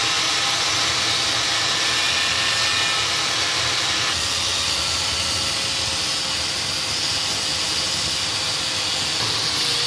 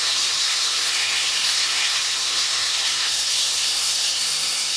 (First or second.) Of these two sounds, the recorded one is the first